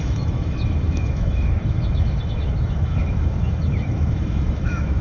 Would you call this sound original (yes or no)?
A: no